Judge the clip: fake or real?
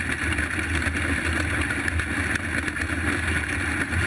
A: real